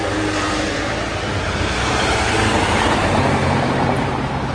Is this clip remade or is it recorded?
remade